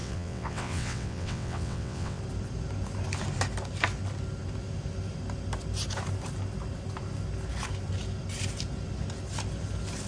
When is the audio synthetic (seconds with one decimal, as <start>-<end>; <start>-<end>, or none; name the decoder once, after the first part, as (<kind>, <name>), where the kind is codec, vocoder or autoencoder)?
0.0-2.2 (vocoder, WaveNeXt)